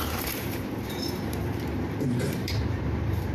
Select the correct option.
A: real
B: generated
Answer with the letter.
B